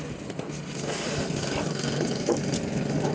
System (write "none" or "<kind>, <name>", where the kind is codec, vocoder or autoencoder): none